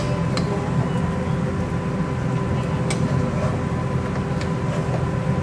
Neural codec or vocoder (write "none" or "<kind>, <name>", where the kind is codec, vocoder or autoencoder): none